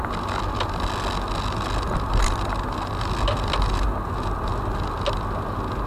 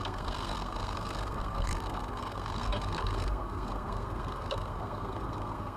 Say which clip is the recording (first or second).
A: first